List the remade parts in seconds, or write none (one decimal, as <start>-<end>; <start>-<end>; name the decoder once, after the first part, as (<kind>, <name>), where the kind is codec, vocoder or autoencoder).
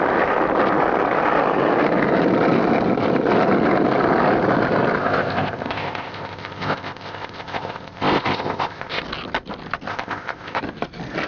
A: 5.0-9.0 (codec, ZipCodec); 9.9-10.6